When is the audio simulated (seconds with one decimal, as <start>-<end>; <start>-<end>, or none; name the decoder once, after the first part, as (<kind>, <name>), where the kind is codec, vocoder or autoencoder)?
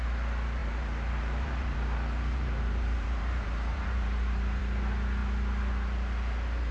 0.6-4.6 (vocoder, BigVGAN v2)